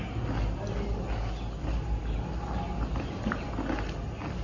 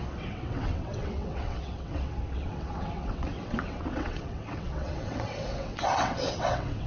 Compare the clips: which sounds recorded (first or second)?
first